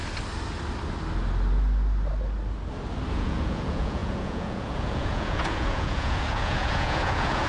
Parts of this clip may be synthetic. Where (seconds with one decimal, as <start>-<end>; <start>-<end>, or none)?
3.1-7.5